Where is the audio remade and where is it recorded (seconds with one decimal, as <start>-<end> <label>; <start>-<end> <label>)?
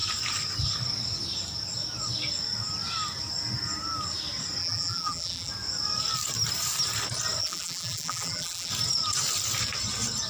0.0-4.6 recorded; 4.6-5.5 remade; 5.5-7.4 recorded; 7.4-8.7 remade; 8.7-10.3 recorded